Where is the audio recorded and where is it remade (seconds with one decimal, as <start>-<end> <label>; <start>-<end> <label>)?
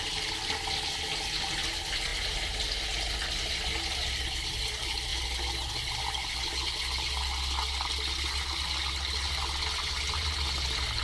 0.0-11.0 recorded